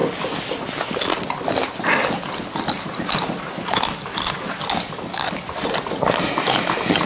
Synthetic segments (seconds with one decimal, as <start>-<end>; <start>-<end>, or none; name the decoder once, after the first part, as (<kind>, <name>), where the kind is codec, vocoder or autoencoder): none